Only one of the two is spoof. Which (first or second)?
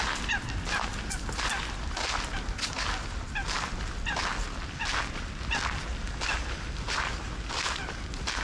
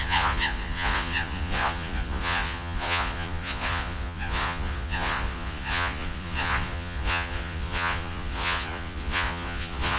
second